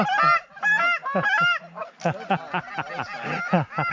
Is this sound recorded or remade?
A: recorded